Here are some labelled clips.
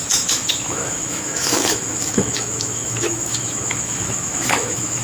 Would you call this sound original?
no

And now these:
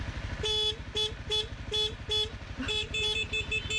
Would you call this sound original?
yes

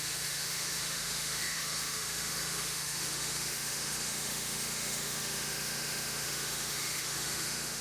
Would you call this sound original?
no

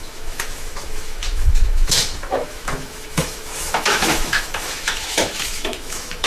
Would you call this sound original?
no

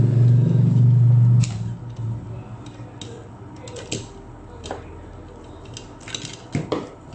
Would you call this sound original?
yes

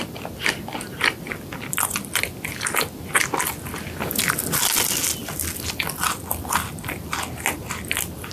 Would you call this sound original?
yes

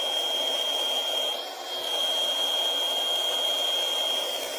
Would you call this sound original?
yes